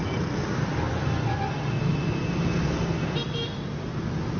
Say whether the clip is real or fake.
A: real